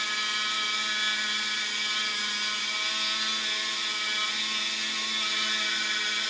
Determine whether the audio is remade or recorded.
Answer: recorded